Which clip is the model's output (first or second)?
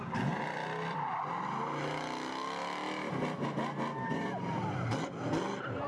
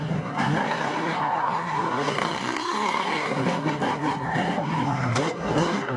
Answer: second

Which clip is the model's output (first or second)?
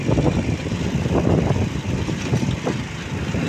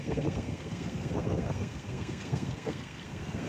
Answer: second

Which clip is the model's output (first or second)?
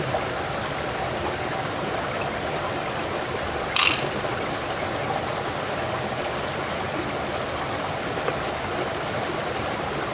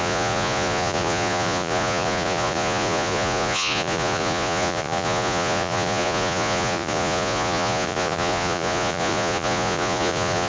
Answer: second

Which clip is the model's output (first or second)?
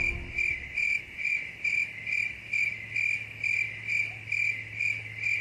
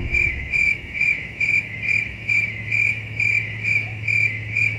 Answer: second